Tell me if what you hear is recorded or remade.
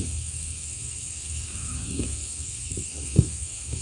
remade